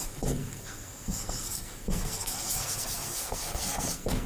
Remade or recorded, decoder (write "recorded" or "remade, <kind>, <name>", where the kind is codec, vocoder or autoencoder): remade, codec, SNAC